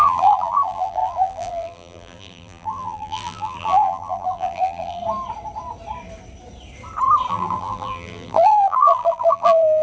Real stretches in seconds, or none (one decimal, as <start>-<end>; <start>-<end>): 5.0-7.3